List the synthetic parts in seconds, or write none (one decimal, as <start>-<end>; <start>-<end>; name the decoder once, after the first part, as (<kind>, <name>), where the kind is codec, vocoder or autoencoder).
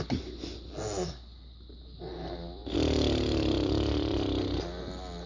none